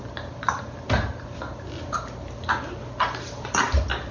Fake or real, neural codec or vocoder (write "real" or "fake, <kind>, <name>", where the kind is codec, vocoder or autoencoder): real